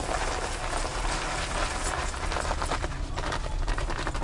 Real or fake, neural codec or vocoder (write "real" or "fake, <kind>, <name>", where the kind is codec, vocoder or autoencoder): real